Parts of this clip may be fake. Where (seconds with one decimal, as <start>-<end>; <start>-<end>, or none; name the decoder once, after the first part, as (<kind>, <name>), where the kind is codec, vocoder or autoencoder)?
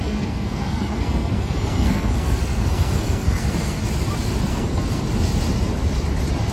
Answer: 0.0-3.9 (codec, SNAC); 4.5-5.0